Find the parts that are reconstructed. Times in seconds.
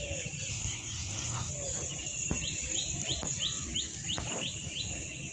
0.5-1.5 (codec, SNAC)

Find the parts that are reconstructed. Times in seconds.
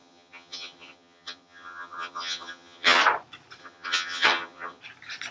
0.0-3.0 (vocoder, HiFi-GAN); 3.6-4.8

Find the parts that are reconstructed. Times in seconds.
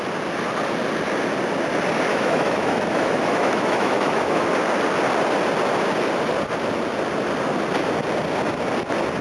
2.1-4.5 (autoencoder, DAC-VAE)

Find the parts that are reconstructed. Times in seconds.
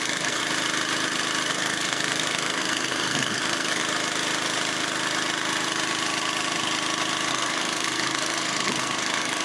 0.0-0.4 (codec, SNAC); 1.5-3.8; 7.3-9.4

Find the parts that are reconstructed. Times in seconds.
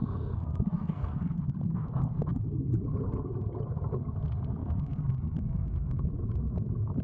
0.0-1.4 (codec, SNAC); 4.6-6.1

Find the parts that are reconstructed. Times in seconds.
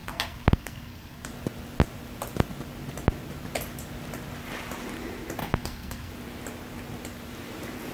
0.0-1.3 (codec, SNAC); 5.4-6.1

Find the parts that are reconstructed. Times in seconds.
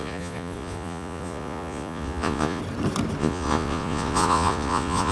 0.0-2.6 (vocoder, Vocos); 3.2-5.1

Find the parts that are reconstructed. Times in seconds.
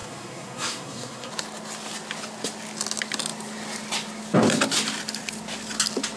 0.0-1.3 (codec, SNAC)